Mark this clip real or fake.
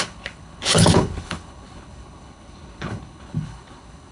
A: fake